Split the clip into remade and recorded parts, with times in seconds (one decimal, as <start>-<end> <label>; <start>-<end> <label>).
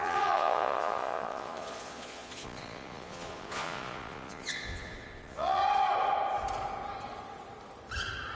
0.0-5.6 remade; 5.6-8.4 recorded